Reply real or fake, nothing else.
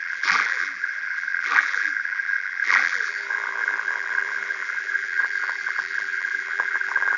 fake